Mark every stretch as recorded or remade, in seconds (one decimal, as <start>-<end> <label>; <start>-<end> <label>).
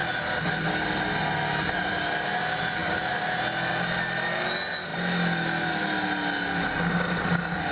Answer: 0.0-7.7 recorded